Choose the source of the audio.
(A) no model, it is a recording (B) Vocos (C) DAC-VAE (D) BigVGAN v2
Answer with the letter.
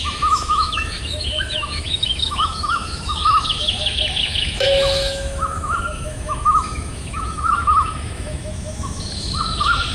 C